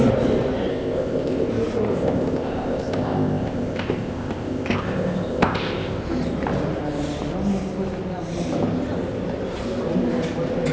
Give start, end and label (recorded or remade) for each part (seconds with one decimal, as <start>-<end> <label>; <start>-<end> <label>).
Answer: 0.0-0.7 recorded; 0.7-1.5 remade; 1.5-1.9 recorded; 1.9-6.0 remade; 6.0-10.7 recorded